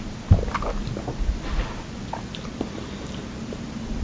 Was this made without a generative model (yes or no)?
yes